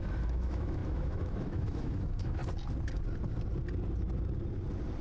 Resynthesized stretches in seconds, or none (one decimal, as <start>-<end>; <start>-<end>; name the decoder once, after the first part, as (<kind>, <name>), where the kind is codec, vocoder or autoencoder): 0.0-2.4 (autoencoder, DAC-VAE)